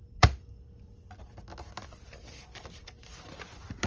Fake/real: real